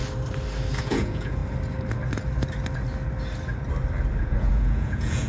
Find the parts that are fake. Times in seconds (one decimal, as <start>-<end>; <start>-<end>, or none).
0.8-1.4; 4.2-5.3